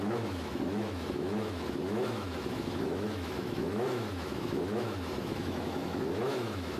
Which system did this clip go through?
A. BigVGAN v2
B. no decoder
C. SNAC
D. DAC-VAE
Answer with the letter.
D